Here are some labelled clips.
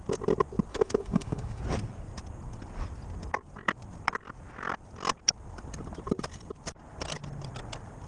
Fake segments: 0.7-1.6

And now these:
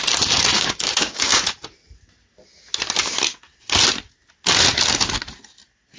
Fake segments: 0.5-1.4

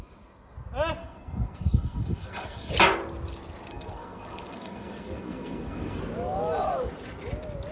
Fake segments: 1.0-2.7; 3.7-6.0

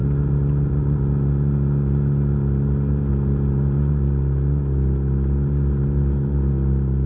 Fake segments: none